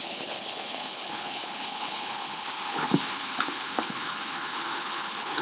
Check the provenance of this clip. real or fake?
fake